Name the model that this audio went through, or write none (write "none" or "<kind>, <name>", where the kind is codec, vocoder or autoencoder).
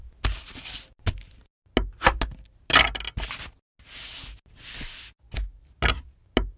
none